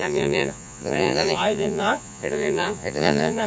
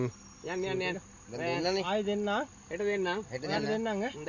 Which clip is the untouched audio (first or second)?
second